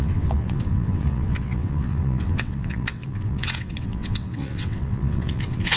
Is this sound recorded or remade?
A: remade